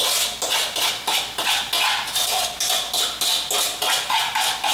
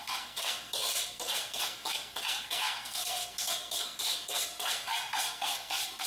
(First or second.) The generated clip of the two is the second